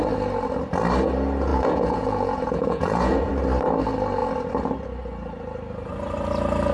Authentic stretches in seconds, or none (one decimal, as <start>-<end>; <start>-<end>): 0.0-1.5; 3.3-6.7